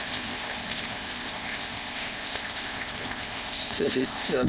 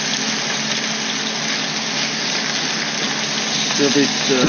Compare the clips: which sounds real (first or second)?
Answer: second